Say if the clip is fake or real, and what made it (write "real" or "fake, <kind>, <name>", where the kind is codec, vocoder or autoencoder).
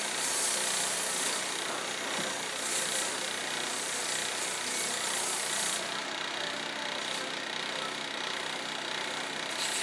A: real